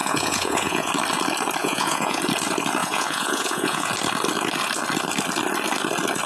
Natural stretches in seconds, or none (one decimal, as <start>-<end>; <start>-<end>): 0.9-1.6; 2.2-2.8; 3.9-6.3